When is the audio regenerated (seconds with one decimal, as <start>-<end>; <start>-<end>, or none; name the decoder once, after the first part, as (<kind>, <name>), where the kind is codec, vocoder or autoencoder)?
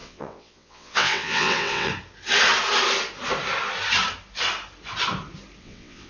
0.0-1.9 (vocoder, WaveNeXt); 5.6-6.1